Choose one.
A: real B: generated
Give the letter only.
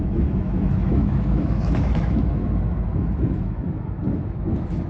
B